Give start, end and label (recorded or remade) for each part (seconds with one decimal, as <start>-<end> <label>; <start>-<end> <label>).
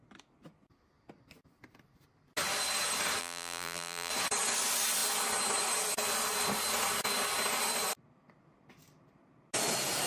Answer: 0.0-3.2 recorded; 3.2-4.1 remade; 4.1-10.1 recorded